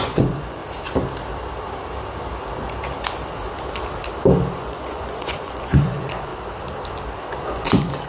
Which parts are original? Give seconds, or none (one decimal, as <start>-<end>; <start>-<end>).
0.6-4.5; 6.3-7.4